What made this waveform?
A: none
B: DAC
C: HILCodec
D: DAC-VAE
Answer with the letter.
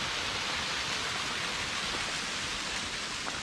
A